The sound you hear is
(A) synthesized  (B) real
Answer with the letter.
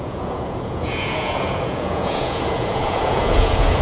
A